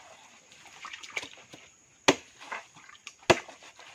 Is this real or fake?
real